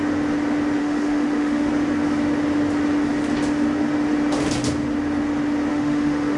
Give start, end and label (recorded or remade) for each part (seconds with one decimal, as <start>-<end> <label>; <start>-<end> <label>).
0.0-0.8 recorded; 0.8-1.7 remade; 1.7-5.7 recorded; 5.7-6.4 remade